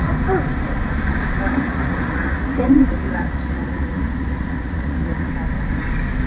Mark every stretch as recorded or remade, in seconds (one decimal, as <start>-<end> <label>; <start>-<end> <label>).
0.0-1.5 recorded; 1.5-5.3 remade; 5.3-6.3 recorded